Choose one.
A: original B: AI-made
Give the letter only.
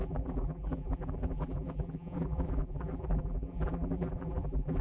B